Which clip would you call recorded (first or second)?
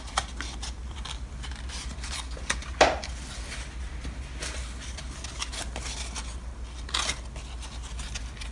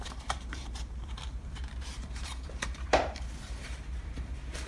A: first